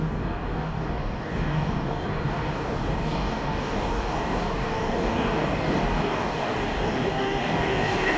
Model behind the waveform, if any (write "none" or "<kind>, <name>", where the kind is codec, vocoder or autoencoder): codec, DAC